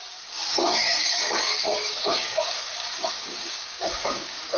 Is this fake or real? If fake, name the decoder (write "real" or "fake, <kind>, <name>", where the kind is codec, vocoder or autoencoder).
fake, codec, DAC